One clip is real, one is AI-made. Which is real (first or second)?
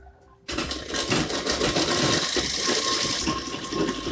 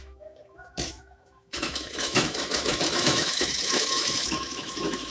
first